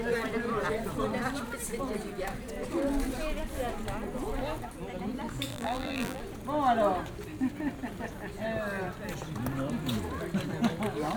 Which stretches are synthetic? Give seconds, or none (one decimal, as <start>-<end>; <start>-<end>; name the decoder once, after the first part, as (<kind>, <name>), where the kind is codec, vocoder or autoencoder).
5.5-6.2 (vocoder, BigVGAN v2)